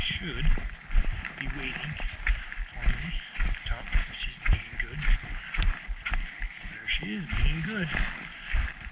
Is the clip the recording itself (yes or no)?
yes